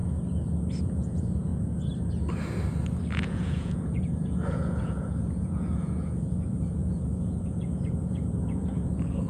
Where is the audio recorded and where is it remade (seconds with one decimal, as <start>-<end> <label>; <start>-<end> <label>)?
0.0-0.8 recorded; 0.8-1.5 remade; 1.5-3.1 recorded; 3.1-9.3 remade